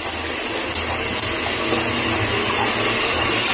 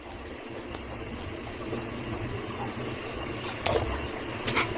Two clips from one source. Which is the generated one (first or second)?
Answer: second